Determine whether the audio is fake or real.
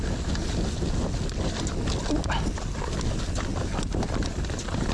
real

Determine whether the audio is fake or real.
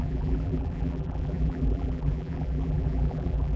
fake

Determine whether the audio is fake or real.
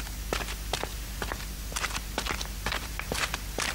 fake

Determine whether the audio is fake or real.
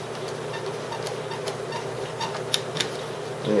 real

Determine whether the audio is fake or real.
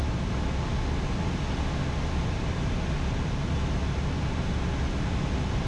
real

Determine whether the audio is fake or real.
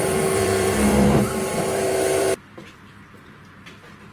fake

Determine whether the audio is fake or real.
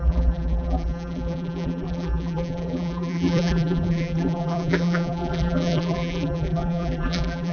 fake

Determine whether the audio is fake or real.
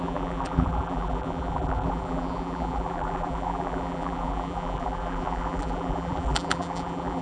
fake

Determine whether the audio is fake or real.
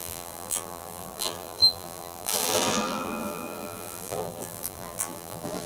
fake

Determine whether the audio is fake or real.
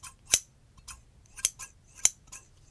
real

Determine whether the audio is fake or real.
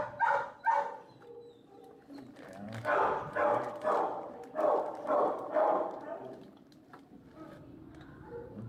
real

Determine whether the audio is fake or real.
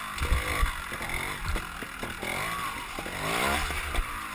real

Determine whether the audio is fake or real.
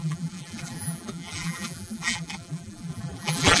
fake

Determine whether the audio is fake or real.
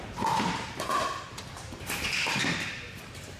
fake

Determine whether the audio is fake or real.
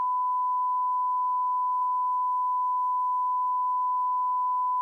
real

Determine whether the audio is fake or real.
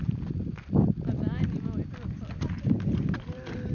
fake